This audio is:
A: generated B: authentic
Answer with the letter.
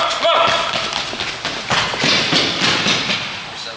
B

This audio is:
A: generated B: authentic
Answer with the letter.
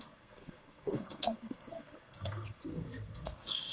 A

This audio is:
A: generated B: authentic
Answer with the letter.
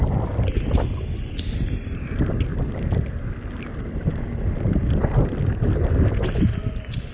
B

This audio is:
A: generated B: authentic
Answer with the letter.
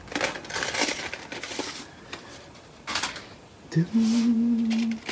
B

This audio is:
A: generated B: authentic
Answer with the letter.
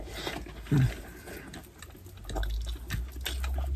B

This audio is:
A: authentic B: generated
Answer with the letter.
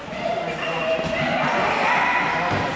A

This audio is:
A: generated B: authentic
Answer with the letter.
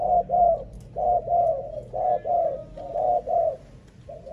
B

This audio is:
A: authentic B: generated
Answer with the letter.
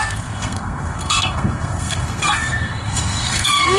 B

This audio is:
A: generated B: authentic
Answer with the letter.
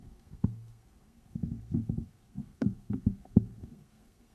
A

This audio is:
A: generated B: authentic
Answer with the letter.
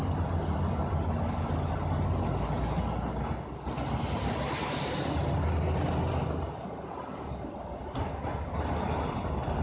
B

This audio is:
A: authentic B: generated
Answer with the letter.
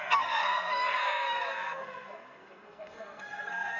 B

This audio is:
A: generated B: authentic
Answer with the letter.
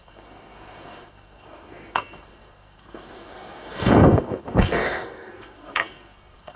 A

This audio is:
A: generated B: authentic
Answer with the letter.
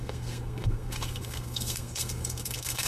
A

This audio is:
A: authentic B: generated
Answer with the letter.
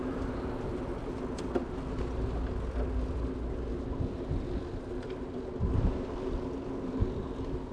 A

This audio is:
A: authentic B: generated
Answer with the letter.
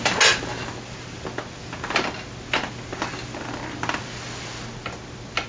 A